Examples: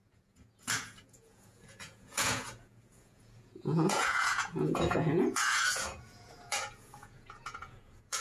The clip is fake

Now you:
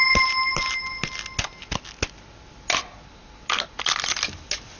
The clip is real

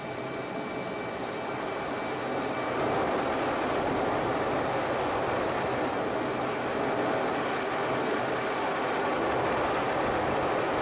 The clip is real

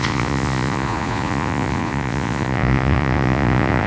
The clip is fake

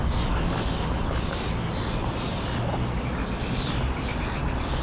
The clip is real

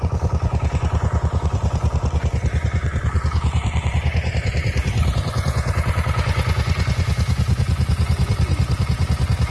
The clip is fake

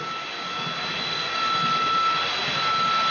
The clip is real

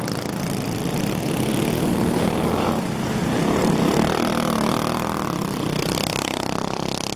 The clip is real